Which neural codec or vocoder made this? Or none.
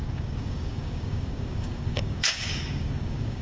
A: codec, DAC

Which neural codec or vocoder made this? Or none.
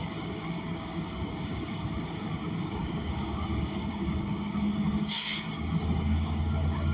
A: codec, DAC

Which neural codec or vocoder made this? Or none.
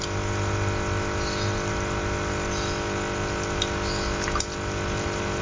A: none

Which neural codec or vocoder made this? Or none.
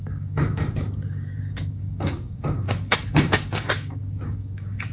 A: codec, DAC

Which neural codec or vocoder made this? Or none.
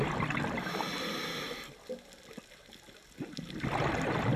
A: none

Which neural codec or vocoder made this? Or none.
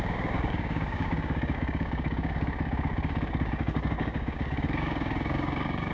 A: codec, DAC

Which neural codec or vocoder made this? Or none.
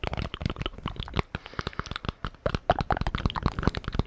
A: none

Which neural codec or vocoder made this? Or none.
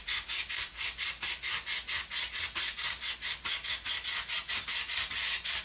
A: none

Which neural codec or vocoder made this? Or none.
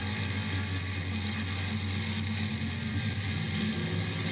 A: none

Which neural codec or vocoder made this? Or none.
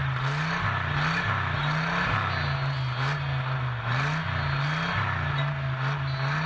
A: none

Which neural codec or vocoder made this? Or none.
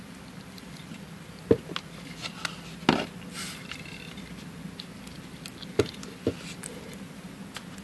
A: none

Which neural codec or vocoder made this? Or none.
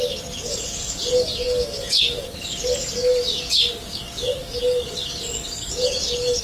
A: codec, DAC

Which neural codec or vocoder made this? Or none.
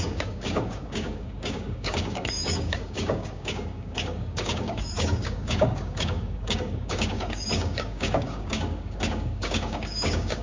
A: codec, DAC